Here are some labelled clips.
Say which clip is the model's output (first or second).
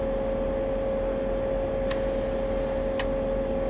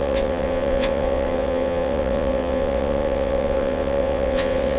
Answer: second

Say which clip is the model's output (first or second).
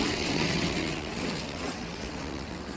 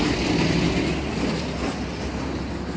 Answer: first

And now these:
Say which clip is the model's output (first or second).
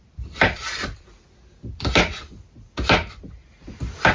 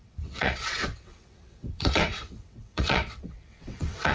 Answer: second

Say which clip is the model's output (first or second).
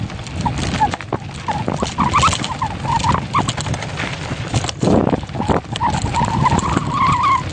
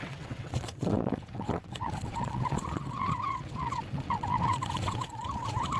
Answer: second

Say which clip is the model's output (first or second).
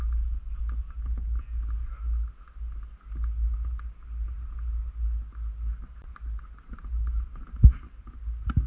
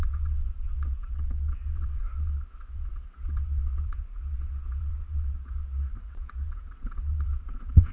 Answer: second